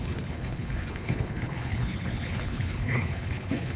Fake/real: fake